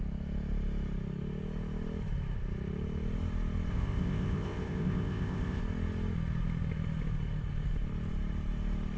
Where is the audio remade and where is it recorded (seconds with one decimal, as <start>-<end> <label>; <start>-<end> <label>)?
0.0-3.7 recorded; 3.7-5.6 remade; 5.6-9.0 recorded